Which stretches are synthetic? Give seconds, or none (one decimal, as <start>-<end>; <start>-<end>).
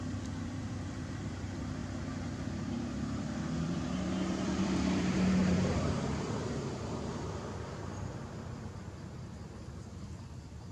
0.0-10.7